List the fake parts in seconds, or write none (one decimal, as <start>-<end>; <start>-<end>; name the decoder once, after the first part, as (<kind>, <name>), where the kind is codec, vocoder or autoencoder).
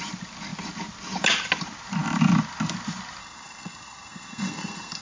3.2-5.0 (codec, SNAC)